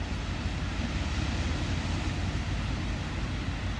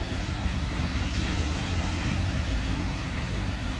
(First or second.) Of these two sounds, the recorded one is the first